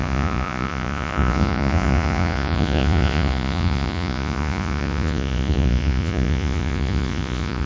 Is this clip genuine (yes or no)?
no